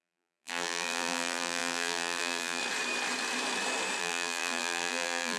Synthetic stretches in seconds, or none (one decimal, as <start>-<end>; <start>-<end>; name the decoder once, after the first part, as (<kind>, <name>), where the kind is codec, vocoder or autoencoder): 0.0-2.6 (vocoder, BigVGAN v2); 4.0-5.4